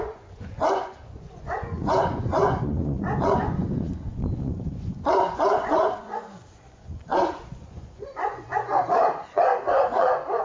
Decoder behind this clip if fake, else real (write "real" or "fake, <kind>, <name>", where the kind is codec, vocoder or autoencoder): fake, vocoder, Vocos